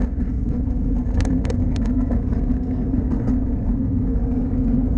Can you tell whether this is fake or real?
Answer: fake